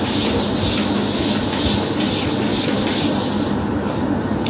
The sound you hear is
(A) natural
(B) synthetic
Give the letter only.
A